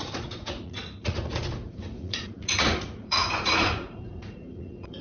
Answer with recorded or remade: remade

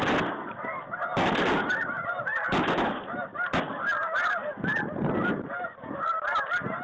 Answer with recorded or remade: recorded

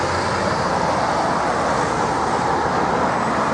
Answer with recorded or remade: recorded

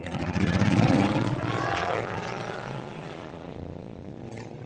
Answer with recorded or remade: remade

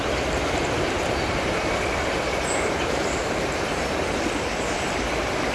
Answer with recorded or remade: recorded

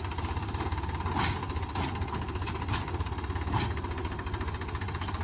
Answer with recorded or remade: recorded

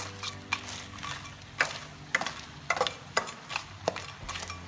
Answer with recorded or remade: recorded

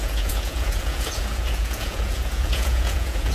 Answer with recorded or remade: remade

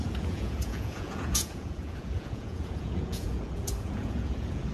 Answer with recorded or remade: remade